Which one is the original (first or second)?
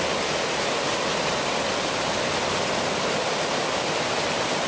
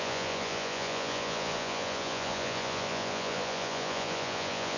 first